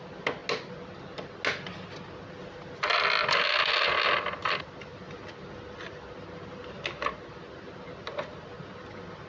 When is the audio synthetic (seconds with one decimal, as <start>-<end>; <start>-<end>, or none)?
none